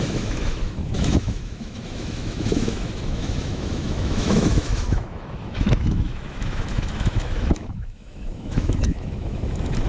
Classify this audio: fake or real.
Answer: fake